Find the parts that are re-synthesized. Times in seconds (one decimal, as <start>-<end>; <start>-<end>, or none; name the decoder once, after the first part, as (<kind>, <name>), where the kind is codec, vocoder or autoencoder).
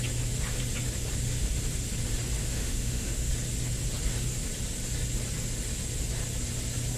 2.4-3.3 (autoencoder, DAC-VAE)